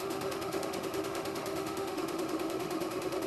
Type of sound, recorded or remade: remade